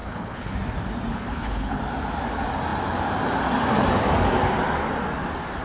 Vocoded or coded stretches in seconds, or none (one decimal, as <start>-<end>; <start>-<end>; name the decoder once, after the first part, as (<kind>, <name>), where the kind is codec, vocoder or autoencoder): 0.0-0.5 (codec, HILCodec); 1.1-1.8